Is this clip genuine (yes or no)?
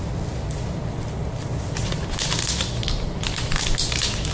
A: yes